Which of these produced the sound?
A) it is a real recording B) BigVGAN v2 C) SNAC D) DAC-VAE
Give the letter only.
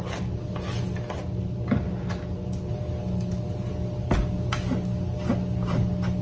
A